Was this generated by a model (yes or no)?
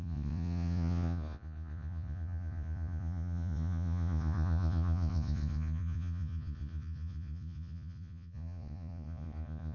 yes